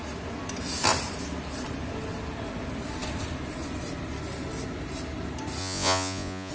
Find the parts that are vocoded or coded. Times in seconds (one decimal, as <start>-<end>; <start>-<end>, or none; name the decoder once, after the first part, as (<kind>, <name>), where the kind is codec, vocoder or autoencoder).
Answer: 5.6-6.5 (vocoder, Vocos)